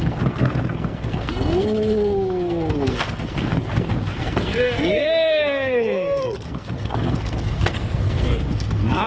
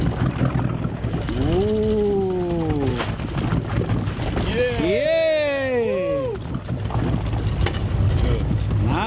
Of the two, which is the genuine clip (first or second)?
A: second